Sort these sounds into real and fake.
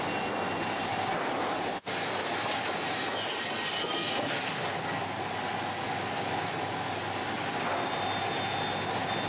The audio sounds real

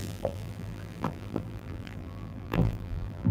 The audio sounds fake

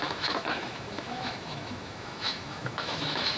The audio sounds fake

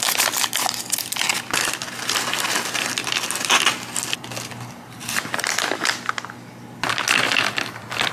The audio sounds real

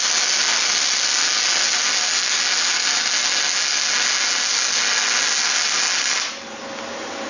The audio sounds real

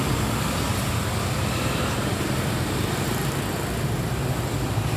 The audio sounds real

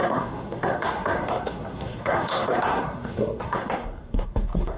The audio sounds fake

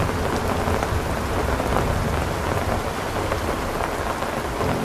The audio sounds real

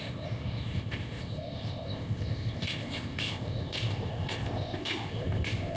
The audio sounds fake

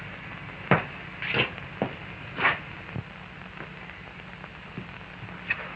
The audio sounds real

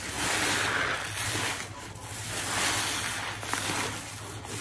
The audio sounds real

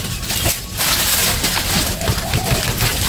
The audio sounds real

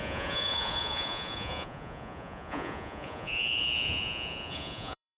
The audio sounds fake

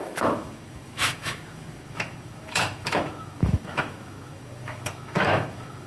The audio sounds fake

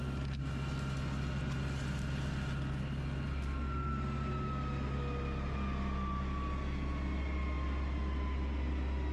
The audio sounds real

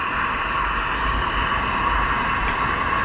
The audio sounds real